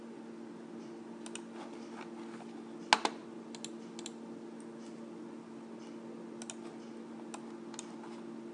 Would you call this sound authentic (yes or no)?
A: yes